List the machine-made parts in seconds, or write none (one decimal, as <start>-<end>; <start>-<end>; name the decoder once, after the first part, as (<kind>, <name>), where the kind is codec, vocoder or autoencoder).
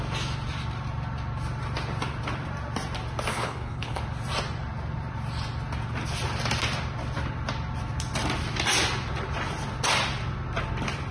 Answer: 3.3-4.0 (codec, HILCodec)